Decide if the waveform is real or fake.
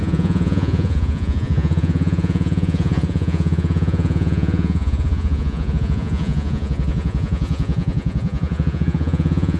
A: fake